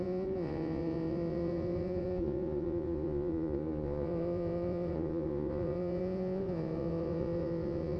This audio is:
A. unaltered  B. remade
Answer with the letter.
B